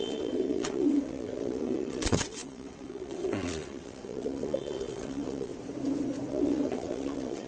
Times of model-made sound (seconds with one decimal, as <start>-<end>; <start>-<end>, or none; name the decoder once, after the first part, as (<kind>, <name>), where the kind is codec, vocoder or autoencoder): 0.0-5.5 (vocoder, WaveNeXt); 6.3-7.5